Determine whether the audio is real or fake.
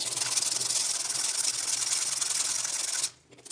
real